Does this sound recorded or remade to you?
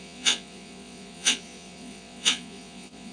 remade